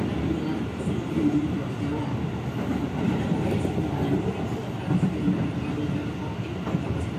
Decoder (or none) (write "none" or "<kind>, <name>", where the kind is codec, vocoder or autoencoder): none